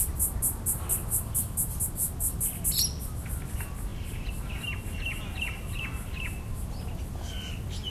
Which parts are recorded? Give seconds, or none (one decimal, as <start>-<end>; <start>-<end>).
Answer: 0.0-7.9